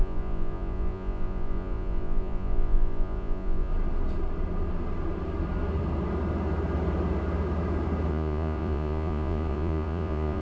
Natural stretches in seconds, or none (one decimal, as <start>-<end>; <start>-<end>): 3.7-8.1